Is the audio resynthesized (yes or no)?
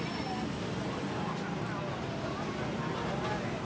no